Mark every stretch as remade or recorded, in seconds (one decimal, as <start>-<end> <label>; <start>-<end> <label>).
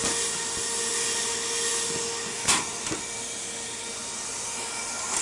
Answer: 0.0-5.2 recorded